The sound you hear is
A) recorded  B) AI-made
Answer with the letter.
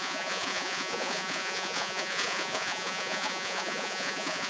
B